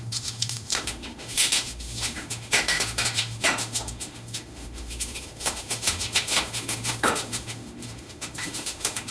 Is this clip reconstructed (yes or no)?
yes